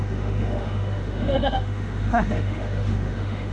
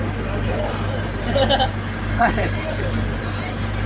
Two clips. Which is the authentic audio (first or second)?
second